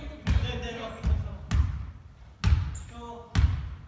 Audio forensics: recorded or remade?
recorded